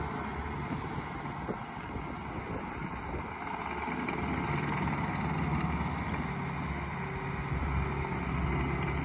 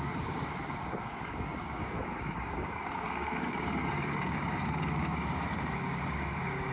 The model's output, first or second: second